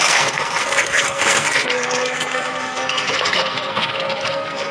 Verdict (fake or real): fake